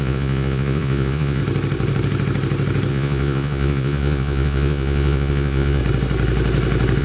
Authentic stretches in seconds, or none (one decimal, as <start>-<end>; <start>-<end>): 1.4-2.9; 5.8-7.0